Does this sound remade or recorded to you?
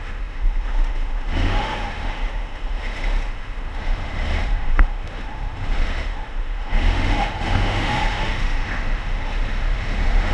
remade